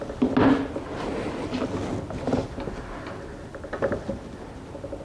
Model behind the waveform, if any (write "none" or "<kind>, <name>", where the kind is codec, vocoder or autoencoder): none